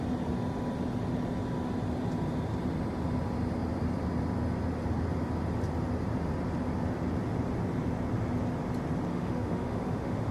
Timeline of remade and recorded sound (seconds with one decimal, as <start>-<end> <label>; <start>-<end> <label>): 0.0-9.1 recorded; 9.1-10.3 remade